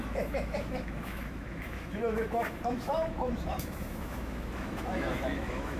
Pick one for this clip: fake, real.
fake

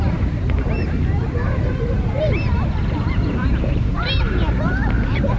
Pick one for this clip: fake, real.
fake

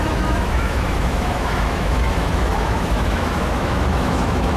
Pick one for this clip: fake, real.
fake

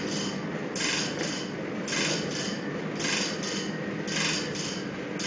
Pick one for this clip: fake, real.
real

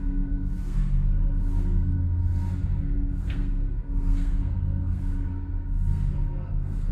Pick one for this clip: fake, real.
fake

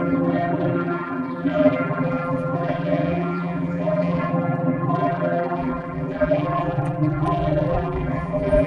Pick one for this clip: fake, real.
fake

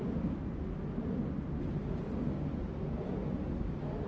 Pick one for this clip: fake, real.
real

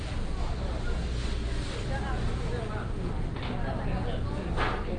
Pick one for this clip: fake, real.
real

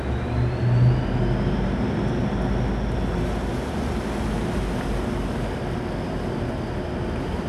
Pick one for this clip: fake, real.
real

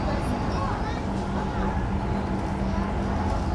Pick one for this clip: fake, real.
real